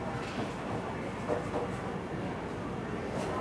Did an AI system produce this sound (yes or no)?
no